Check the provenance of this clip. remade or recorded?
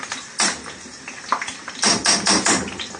recorded